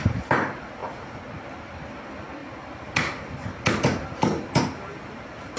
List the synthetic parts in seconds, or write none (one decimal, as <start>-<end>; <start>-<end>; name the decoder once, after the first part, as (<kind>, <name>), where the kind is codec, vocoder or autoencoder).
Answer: none